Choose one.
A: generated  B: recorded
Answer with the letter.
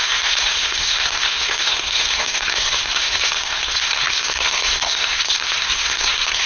A